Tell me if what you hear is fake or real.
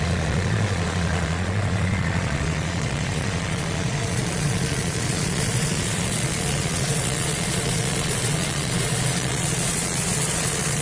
fake